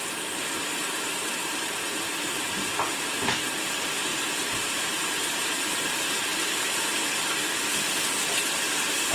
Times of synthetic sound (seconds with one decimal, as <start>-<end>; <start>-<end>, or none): 1.4-2.5; 4.1-5.8